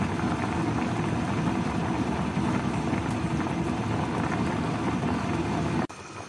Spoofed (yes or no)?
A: no